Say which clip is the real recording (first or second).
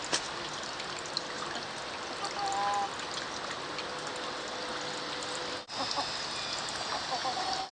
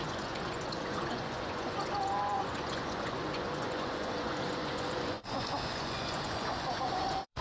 first